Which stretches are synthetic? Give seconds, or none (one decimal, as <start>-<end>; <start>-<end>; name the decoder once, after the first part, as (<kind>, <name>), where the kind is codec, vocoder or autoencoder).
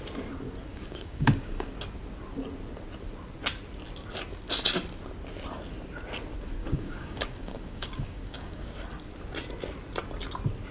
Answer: 0.7-1.7 (codec, DAC); 6.6-8.7